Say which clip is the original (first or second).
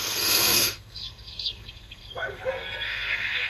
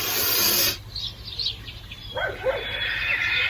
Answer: second